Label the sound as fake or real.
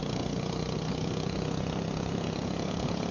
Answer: fake